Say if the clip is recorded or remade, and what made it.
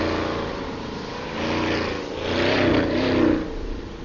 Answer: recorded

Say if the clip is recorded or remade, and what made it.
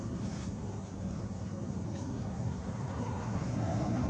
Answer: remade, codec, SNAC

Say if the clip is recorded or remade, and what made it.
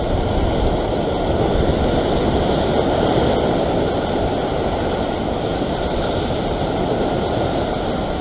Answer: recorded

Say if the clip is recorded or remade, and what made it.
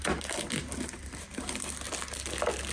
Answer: recorded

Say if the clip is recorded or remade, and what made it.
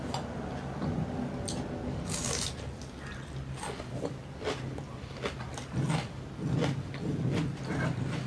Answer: recorded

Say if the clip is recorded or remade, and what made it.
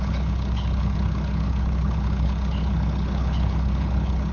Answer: remade, codec, HILCodec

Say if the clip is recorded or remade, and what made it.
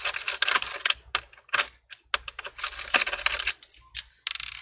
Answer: recorded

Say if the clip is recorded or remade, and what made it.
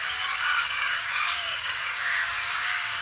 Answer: remade, codec, DAC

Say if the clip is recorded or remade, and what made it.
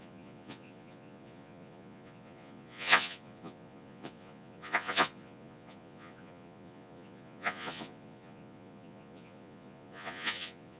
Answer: remade, vocoder, Vocos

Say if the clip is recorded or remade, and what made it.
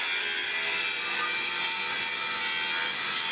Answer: recorded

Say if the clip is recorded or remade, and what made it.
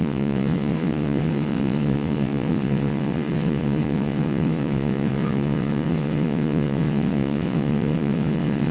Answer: remade, vocoder, WaveNeXt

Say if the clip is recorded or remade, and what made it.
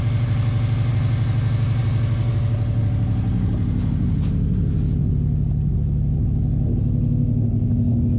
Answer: recorded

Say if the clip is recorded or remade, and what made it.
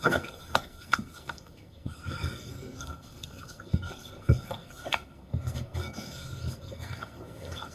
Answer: remade, codec, SNAC